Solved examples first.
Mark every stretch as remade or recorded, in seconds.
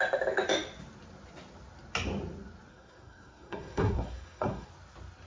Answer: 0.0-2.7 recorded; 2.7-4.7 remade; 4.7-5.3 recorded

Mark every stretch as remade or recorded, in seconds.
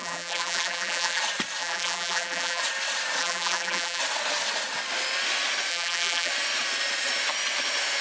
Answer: 0.0-1.2 remade; 1.2-1.6 recorded; 1.6-2.6 remade; 2.6-3.2 recorded; 3.2-4.0 remade; 4.0-5.7 recorded; 5.7-6.3 remade; 6.3-8.0 recorded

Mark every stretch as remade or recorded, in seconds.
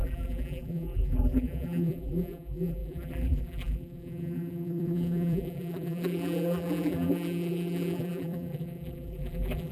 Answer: 0.0-9.7 remade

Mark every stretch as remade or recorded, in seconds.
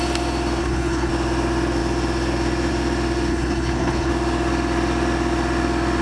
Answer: 0.0-0.6 recorded; 0.6-1.1 remade; 1.1-3.3 recorded; 3.3-4.1 remade; 4.1-6.0 recorded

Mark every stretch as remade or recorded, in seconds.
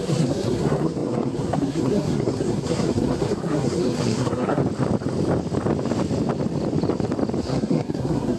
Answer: 0.0-4.6 remade; 4.6-7.4 recorded; 7.4-8.4 remade